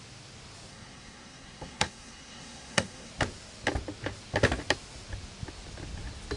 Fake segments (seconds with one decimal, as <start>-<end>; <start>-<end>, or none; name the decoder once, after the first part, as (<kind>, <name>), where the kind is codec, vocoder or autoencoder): 0.7-3.1 (codec, SNAC)